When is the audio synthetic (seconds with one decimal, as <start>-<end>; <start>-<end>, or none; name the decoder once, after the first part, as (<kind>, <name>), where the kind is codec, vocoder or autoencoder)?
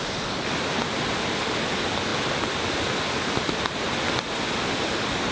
2.1-3.8 (vocoder, BigVGAN v2)